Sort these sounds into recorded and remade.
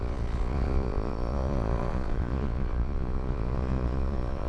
remade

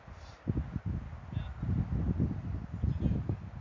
recorded